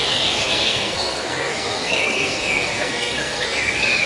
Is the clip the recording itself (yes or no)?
no